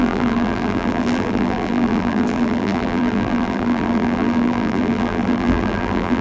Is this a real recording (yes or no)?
no